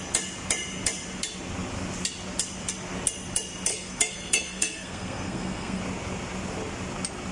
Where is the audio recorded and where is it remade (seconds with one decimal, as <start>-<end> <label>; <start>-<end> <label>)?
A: 0.0-3.7 recorded; 3.7-5.8 remade; 5.8-7.3 recorded